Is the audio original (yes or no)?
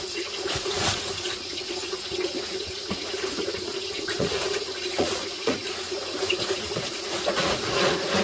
no